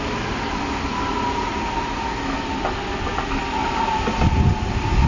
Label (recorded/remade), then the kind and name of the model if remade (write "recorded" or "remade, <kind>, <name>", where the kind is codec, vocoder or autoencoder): recorded